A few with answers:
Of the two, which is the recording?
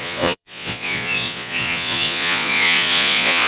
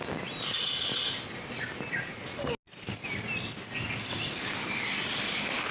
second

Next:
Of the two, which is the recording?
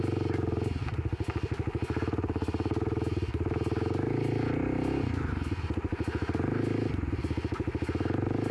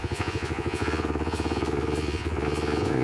first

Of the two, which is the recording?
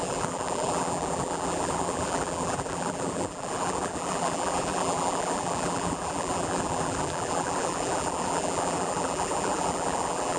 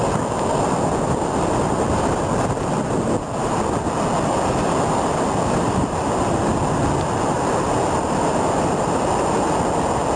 second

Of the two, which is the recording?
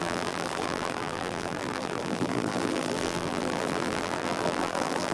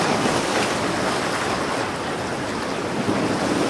second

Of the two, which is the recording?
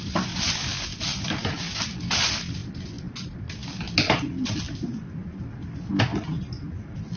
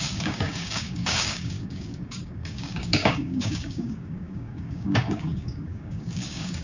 first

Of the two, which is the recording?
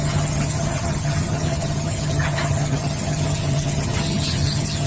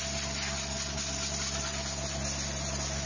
second